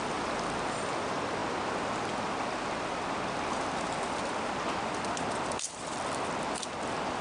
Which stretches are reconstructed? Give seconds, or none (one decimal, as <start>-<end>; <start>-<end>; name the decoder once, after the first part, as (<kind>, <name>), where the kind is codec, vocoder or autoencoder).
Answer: 0.0-1.4 (vocoder, BigVGAN v2); 2.0-7.2